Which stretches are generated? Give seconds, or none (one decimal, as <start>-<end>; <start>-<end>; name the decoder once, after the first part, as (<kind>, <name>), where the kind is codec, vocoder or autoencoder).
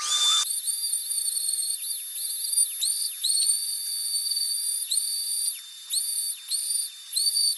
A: none